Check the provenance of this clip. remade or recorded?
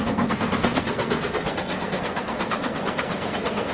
remade